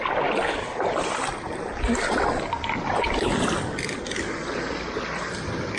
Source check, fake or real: real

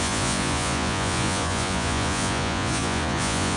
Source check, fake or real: fake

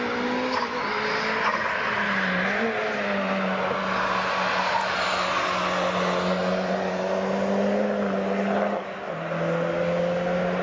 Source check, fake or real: real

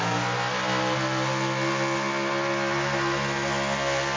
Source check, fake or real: real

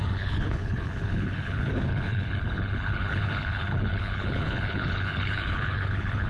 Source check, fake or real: fake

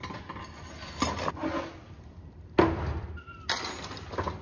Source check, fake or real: real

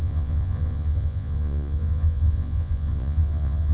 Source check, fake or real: fake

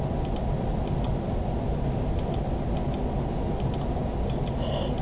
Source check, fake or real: real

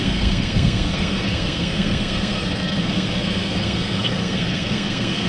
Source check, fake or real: fake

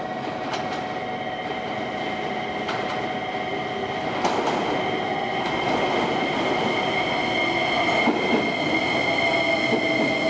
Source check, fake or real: real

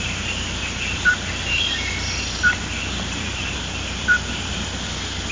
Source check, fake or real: real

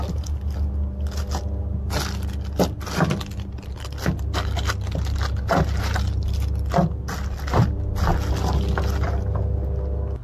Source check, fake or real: real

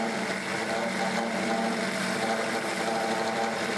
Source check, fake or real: real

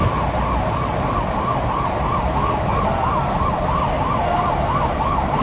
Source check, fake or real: real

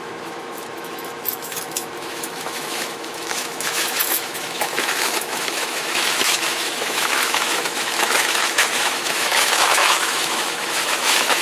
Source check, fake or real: fake